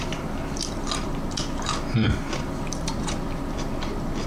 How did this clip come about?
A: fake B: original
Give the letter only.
A